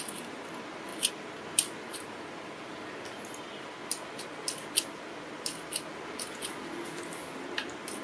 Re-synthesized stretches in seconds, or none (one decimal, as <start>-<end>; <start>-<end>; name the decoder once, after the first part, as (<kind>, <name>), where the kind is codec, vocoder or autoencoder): none